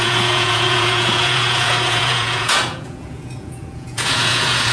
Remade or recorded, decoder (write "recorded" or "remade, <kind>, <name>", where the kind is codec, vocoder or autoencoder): remade, vocoder, Vocos